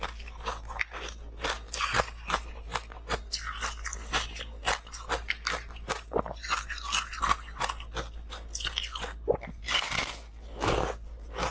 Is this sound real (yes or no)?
yes